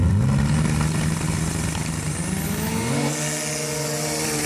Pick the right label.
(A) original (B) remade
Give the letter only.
A